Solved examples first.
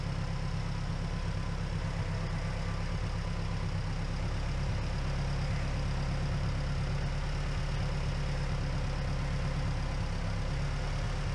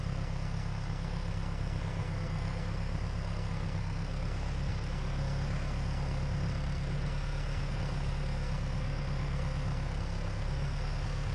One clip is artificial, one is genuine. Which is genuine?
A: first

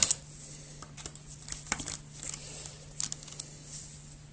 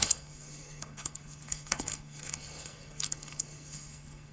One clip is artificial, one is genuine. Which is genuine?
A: first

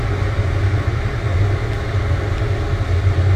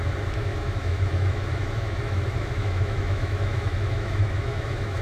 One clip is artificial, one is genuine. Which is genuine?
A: first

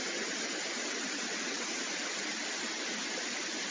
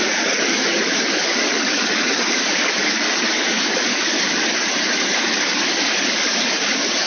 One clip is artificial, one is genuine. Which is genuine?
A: first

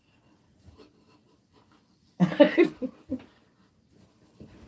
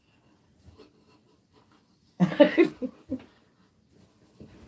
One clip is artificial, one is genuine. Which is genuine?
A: second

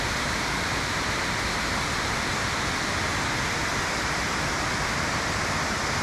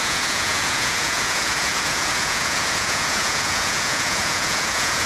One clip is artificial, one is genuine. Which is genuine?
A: first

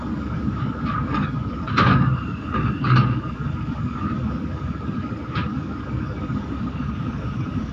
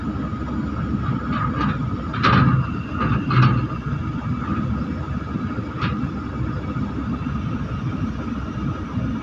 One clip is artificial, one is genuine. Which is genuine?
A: second